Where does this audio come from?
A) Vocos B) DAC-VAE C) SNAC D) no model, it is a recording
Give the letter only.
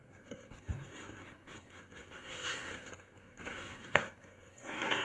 C